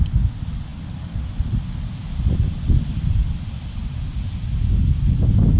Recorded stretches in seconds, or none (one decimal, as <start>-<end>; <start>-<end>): 0.0-5.6

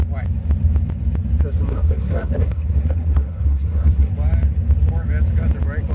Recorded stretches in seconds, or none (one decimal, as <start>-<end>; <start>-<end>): 0.0-1.7; 4.1-5.9

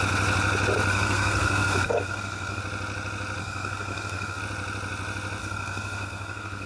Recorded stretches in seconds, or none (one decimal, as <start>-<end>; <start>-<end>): 0.0-0.9; 2.6-3.4; 4.4-5.4

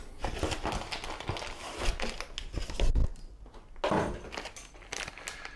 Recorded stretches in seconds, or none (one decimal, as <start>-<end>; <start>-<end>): 0.0-5.6

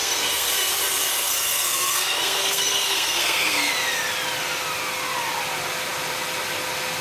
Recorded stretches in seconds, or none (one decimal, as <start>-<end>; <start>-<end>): 0.7-1.1; 3.7-7.0

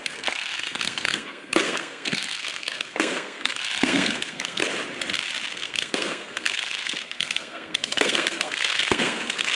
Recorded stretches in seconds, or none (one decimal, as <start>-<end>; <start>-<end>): 4.6-5.5

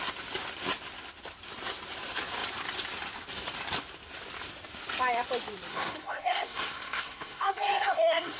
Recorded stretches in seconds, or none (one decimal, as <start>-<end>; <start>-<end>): 0.0-5.7